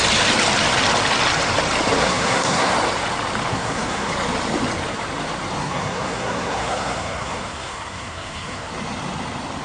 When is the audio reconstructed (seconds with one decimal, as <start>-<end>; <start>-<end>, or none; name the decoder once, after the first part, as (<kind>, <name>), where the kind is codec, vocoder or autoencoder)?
2.0-2.7 (codec, SNAC); 3.5-4.1; 5.6-8.7

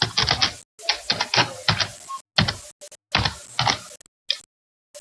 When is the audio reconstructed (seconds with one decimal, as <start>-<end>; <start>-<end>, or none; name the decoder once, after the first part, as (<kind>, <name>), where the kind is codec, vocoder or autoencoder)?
none

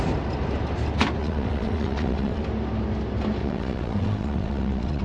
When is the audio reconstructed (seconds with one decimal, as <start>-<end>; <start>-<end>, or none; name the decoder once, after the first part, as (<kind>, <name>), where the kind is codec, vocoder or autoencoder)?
1.2-2.4 (vocoder, WaveNeXt); 3.4-5.0

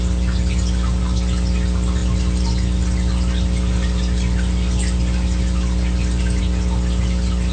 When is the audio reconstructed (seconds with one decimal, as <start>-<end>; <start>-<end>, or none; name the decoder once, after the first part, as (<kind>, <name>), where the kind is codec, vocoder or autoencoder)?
none

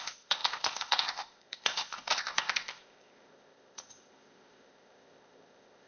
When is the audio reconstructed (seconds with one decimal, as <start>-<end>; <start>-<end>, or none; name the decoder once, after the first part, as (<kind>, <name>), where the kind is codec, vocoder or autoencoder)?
0.0-5.9 (codec, ZipCodec)

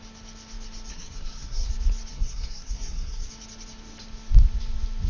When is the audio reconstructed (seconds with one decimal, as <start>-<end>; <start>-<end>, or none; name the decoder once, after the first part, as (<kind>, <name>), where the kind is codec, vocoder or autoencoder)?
0.9-1.7 (codec, SNAC); 2.1-3.3